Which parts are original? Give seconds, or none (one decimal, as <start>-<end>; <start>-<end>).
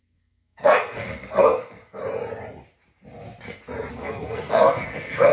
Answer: 2.0-3.9